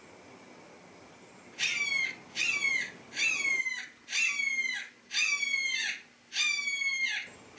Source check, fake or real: real